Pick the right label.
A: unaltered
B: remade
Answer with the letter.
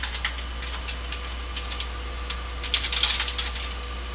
A